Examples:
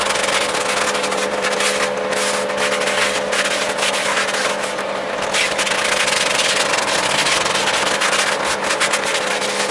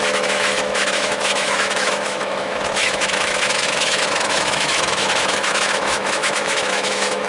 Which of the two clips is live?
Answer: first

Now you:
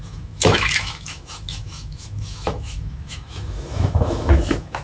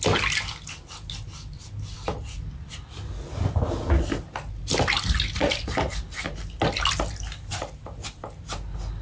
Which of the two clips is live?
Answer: second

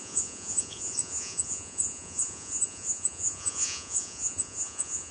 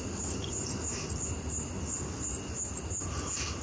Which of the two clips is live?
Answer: second